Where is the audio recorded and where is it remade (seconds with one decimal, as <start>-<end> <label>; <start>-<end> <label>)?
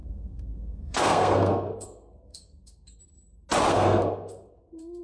0.0-3.0 remade; 3.0-3.7 recorded; 3.7-5.0 remade